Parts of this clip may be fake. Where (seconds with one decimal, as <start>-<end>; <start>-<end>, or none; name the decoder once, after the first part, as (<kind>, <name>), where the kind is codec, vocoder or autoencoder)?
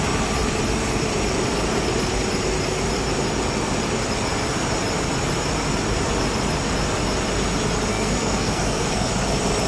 7.9-9.1 (codec, SNAC)